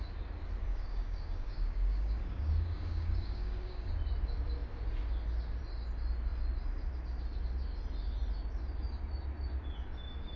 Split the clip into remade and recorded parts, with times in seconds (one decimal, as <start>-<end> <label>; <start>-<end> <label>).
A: 0.0-0.7 recorded; 0.7-3.9 remade; 3.9-10.4 recorded